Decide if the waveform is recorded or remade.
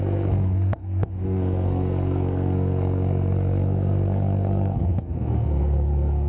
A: remade